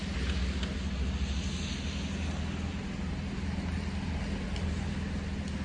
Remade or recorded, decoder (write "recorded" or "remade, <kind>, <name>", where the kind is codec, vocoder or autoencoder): recorded